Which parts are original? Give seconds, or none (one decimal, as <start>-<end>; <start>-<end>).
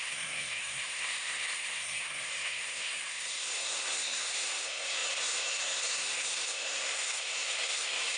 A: none